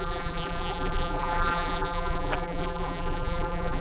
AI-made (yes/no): yes